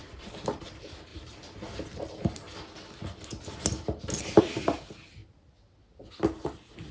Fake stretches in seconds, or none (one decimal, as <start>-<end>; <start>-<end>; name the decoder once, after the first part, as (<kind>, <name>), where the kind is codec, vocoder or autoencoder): none